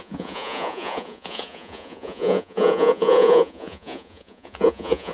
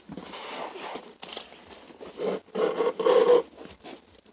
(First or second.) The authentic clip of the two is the second